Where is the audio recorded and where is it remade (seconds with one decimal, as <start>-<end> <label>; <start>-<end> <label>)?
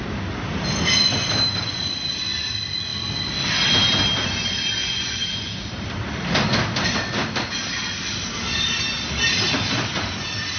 0.0-4.8 recorded; 4.8-5.6 remade; 5.6-10.6 recorded